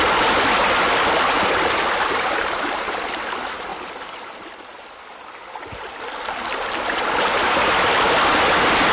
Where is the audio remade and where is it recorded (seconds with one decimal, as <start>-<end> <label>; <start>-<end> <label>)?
0.0-8.9 recorded